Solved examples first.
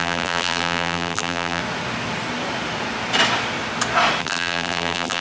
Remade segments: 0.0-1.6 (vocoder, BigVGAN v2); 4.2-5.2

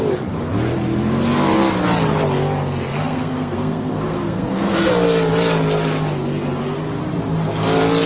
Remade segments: 2.9-4.9 (codec, SNAC)

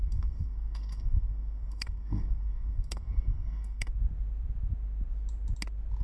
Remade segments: 0.0-3.9 (codec, SNAC)

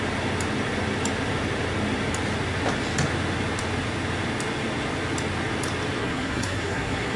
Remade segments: 6.0-7.2 (codec, SNAC)